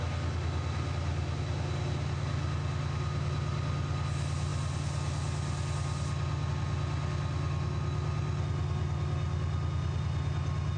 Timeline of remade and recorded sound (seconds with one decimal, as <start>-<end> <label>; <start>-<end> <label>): 0.0-10.8 recorded